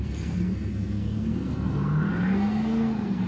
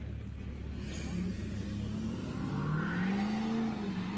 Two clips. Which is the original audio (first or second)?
second